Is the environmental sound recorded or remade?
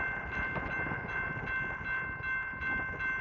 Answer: recorded